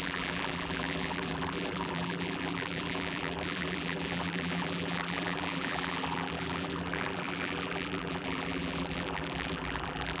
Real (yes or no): no